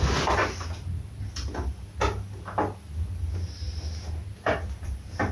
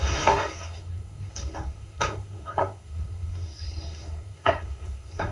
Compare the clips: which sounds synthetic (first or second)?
second